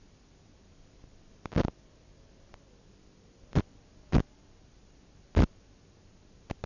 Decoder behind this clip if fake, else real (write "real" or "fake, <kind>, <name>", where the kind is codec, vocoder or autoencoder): real